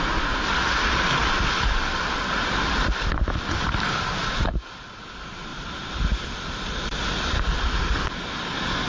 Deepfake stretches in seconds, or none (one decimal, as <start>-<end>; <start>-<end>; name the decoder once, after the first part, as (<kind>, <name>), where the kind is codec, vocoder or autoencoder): none